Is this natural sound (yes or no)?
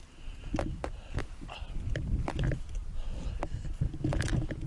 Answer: yes